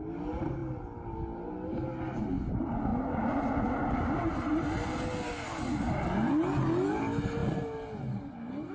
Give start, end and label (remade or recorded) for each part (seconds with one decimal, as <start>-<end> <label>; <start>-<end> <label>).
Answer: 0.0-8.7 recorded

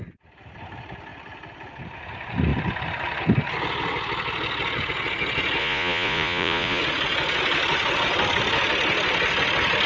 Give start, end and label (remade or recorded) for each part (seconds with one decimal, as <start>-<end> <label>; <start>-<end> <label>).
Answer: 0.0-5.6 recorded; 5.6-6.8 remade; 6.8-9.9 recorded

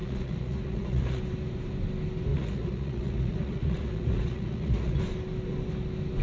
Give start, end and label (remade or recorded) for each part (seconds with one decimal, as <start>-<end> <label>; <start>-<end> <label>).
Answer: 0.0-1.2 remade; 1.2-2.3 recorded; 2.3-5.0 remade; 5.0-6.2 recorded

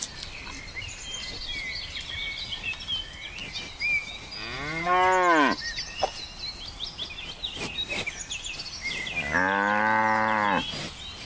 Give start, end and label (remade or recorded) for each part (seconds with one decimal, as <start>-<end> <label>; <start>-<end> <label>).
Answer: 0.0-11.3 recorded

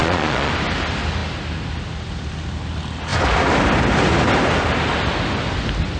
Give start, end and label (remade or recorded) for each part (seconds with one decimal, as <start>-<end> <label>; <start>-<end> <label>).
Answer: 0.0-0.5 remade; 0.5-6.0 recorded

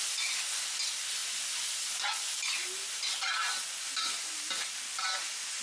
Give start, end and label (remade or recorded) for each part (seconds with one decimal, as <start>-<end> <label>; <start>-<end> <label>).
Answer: 0.0-5.6 recorded

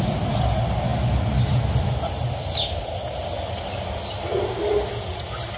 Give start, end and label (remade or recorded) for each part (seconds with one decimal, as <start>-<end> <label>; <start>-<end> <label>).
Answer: 0.0-5.6 recorded

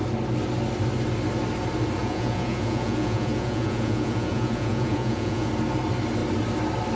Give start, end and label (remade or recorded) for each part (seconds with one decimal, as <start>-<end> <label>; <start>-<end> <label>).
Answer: 0.0-2.0 recorded; 2.0-5.5 remade; 5.5-7.0 recorded